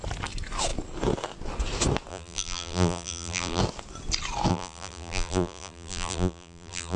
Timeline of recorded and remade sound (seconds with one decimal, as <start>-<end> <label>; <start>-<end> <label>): 0.0-2.1 recorded; 2.1-3.6 remade; 3.6-4.5 recorded; 4.5-7.0 remade